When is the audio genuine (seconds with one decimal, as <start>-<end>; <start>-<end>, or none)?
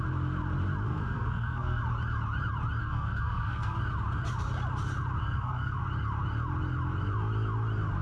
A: 0.0-0.9; 1.8-2.8; 3.8-5.2; 5.8-8.0